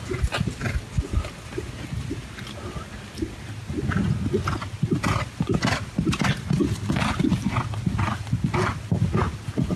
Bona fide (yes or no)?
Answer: yes